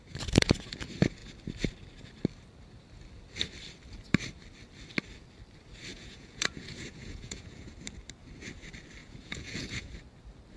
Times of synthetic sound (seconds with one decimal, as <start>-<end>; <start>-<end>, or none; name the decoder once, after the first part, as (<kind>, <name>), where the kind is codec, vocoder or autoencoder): 5.9-7.7 (vocoder, Vocos); 9.0-9.9